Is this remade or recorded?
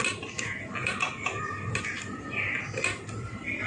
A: recorded